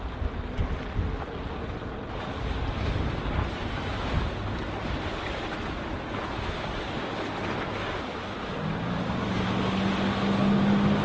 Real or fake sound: real